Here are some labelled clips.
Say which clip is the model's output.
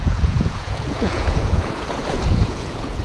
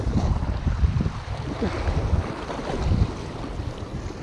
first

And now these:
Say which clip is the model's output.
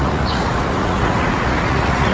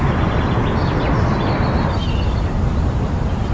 first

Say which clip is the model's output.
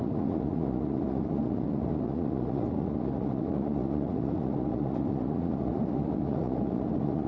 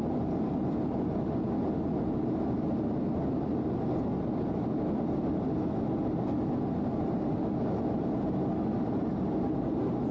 first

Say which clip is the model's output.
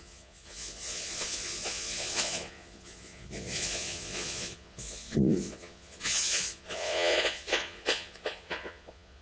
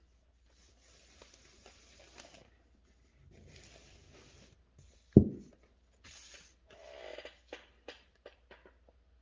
first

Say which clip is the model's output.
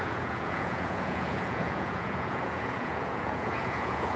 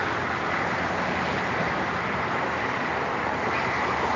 first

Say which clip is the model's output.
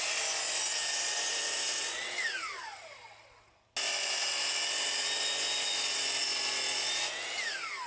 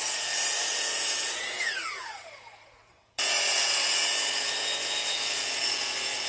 second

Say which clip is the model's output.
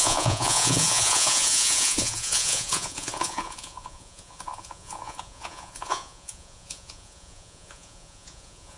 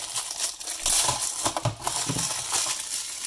first